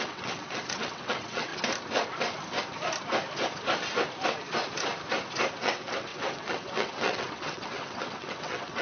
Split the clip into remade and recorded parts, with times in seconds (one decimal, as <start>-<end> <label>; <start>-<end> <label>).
0.0-1.5 remade; 1.5-5.5 recorded; 5.5-8.8 remade

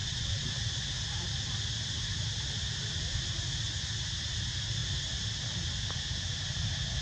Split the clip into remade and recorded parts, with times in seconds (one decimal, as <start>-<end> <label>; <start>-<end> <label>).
0.0-0.5 remade; 0.5-7.0 recorded